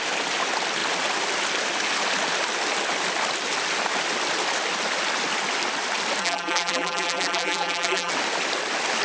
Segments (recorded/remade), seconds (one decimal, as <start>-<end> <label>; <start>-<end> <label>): 0.0-6.2 recorded; 6.2-8.1 remade; 8.1-9.0 recorded